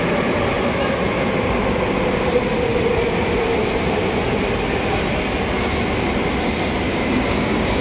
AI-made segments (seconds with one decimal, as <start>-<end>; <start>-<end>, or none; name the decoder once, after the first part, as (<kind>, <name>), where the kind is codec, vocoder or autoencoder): 6.9-7.8 (codec, DAC)